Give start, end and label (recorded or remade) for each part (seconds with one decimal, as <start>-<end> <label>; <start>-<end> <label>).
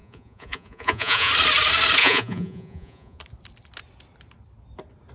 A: 0.0-1.3 remade; 1.3-2.0 recorded; 2.0-3.2 remade; 3.2-5.1 recorded